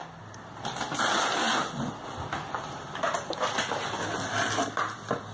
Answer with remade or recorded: recorded